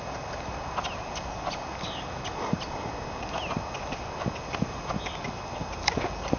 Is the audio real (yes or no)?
yes